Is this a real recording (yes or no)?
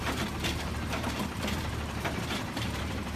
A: no